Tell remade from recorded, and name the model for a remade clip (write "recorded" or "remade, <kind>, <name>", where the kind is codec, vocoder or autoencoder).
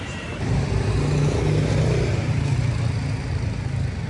recorded